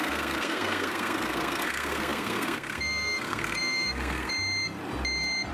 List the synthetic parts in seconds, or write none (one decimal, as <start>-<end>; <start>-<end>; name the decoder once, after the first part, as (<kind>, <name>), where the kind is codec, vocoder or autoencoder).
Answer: 0.0-4.3 (codec, SNAC)